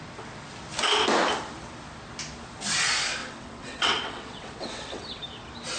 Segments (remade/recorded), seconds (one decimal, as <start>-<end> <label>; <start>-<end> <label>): 0.0-3.2 recorded; 3.2-5.2 remade; 5.2-5.8 recorded